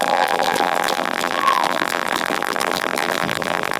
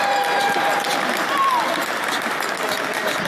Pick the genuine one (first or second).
second